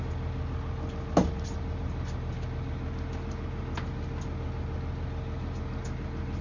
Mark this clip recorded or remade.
recorded